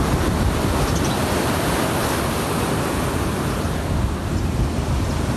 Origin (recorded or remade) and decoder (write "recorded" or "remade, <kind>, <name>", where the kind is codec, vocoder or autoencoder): recorded